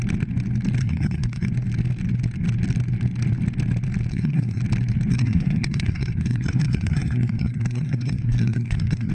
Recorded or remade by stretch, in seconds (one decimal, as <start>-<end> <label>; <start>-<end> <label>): 0.0-0.8 recorded; 0.8-1.5 remade; 1.5-4.1 recorded; 4.1-4.6 remade; 4.6-5.1 recorded; 5.1-9.1 remade